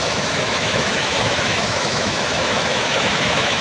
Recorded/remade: remade